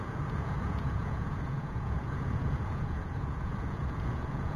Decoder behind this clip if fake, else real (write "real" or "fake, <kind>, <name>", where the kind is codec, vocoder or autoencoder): fake, vocoder, Vocos